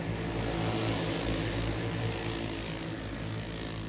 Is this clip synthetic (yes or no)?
no